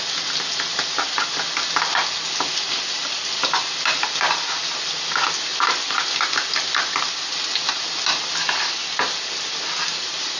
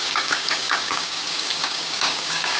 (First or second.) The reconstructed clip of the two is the second